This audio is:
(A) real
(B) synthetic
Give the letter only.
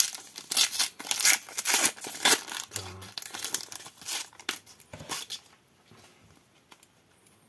A